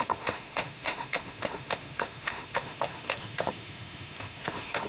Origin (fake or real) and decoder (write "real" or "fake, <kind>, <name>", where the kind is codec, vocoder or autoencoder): fake, autoencoder, DAC-VAE